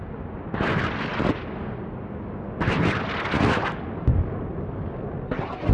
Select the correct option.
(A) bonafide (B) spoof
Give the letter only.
A